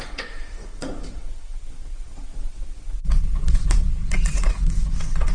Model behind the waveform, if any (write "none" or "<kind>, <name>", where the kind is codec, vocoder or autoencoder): vocoder, WaveNeXt